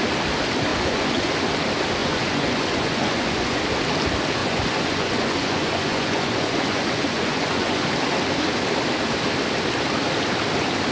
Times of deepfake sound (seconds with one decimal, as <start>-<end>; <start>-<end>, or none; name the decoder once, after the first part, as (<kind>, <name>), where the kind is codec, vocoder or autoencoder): 0.7-1.3 (vocoder, Vocos); 2.0-3.6; 4.4-7.8